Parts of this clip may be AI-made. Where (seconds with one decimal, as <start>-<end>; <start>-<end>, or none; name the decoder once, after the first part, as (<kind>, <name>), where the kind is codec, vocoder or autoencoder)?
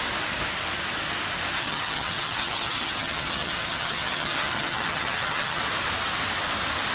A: 1.5-5.6 (vocoder, HiFi-GAN)